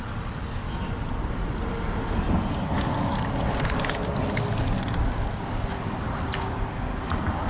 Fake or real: real